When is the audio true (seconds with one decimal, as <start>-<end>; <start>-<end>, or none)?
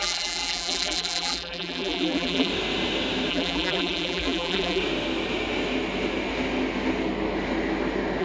2.5-3.3; 4.8-8.2